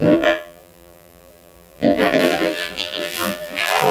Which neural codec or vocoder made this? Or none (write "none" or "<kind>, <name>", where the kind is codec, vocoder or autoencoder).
vocoder, BigVGAN v2